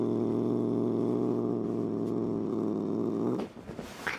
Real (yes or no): yes